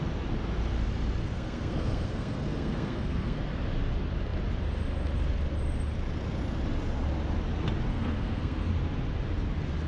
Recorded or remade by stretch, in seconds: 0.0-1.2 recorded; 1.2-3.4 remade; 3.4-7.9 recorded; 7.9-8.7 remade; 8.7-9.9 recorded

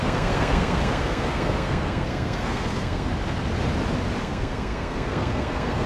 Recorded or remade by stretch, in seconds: 0.0-3.1 remade; 3.1-4.2 recorded; 4.2-5.9 remade

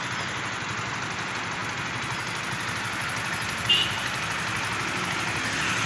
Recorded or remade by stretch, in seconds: 0.0-5.9 recorded

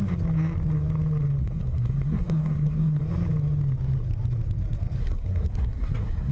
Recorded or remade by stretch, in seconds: 0.0-1.4 recorded; 1.4-3.0 remade; 3.0-5.0 recorded; 5.0-6.3 remade